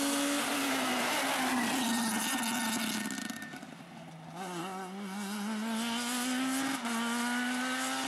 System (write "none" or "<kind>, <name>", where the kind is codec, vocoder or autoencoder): none